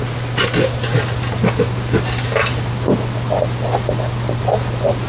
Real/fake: real